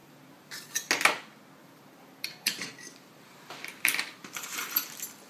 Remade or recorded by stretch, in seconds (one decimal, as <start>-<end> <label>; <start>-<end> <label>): 0.0-0.7 remade; 0.7-1.6 recorded; 1.6-4.8 remade; 4.8-5.3 recorded